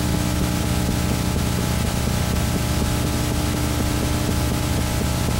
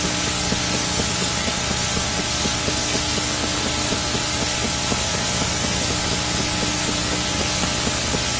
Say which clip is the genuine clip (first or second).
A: first